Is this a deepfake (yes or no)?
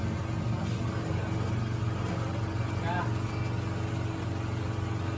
no